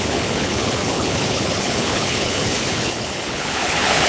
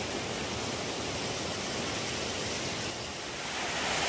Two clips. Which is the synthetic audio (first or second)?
first